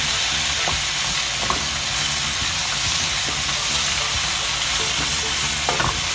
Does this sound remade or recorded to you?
recorded